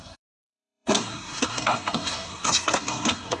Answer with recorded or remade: remade